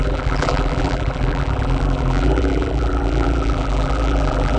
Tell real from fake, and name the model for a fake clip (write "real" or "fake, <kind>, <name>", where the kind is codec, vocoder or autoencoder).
fake, vocoder, BigVGAN v2